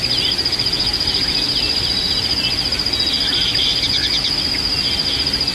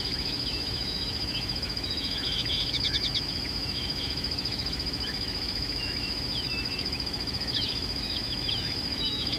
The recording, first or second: first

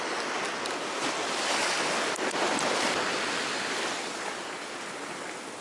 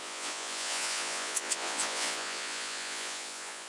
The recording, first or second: first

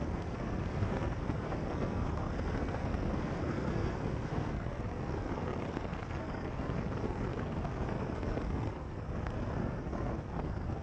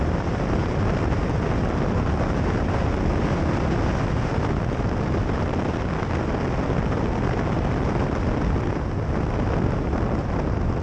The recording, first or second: second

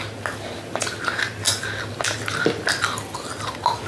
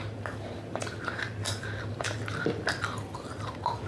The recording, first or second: first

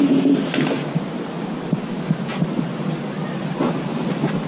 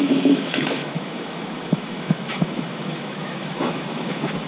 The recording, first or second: first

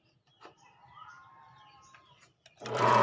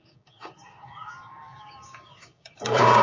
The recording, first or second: first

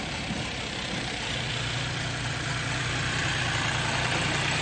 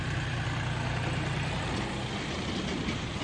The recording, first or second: second